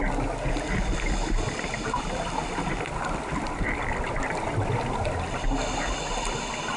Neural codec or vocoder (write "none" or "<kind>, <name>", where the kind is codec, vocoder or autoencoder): none